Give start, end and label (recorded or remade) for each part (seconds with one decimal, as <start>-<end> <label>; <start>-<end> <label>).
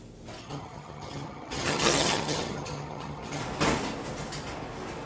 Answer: 0.0-0.4 recorded; 0.4-3.4 remade; 3.4-5.1 recorded